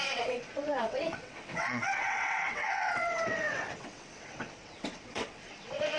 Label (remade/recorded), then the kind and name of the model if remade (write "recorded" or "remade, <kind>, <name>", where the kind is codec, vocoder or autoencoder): remade, vocoder, WaveNeXt